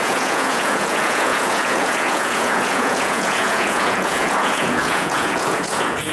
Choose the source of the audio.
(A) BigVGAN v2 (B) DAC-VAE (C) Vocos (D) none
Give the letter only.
C